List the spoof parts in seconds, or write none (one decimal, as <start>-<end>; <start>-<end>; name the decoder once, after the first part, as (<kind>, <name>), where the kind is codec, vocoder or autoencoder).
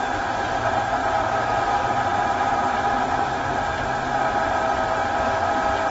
1.0-1.6 (vocoder, BigVGAN v2); 2.1-2.6